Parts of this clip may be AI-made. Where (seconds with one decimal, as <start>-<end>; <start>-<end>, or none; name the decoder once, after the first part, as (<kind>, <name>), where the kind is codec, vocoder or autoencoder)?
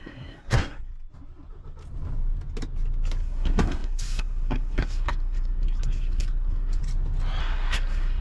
0.0-0.9 (codec, SNAC); 3.2-6.8; 7.4-8.2